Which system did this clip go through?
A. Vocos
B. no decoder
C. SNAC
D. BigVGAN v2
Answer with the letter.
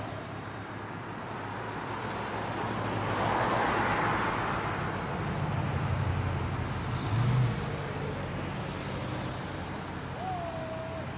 B